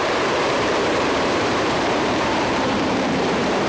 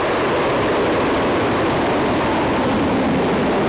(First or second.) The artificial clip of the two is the first